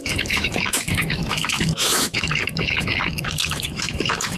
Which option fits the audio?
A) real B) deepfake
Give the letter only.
B